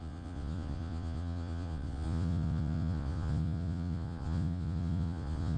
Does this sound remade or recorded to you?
remade